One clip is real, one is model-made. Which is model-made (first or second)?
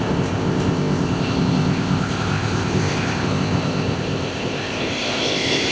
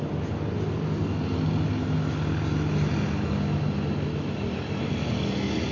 first